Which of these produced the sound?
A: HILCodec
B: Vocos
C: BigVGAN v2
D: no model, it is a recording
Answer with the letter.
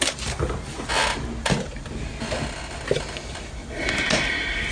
D